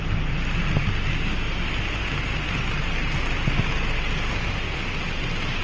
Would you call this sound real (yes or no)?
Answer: yes